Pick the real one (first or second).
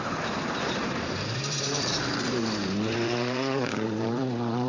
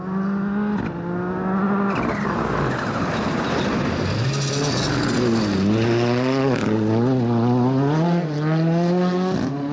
second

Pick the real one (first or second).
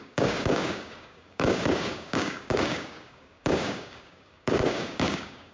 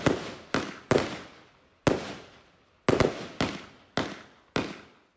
second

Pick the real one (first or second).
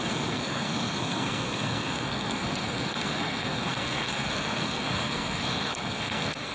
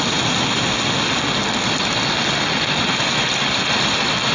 second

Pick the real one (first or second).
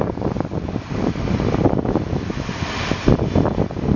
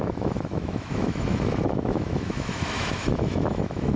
first